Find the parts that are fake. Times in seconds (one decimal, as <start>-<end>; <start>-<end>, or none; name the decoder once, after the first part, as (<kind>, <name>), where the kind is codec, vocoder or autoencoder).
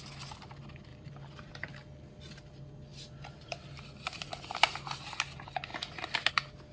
0.9-1.5 (vocoder, BigVGAN v2); 2.9-4.3